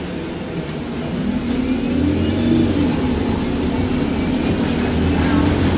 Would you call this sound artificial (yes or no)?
no